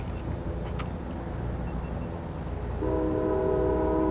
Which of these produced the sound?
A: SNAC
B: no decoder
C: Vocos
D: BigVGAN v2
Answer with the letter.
B